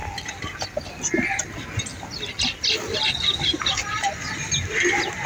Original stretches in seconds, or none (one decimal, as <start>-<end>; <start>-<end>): 0.0-5.3